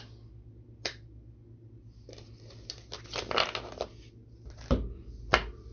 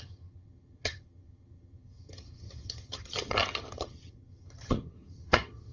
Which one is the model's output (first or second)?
second